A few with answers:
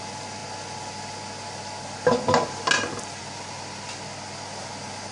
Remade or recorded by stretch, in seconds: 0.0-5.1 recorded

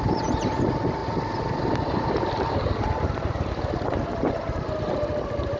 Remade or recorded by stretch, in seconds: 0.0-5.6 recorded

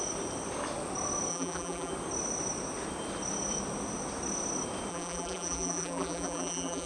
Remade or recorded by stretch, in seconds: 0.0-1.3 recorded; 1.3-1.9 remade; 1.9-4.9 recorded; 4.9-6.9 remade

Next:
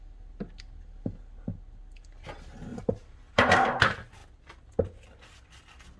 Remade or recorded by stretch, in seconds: 0.0-2.7 recorded; 2.7-3.8 remade; 3.8-6.0 recorded

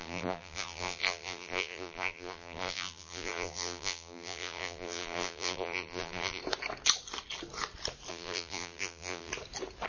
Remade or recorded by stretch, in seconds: 0.0-6.4 remade; 6.4-8.1 recorded; 8.1-9.3 remade; 9.3-9.9 recorded